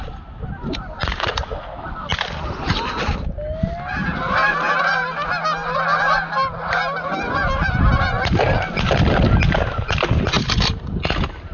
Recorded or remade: recorded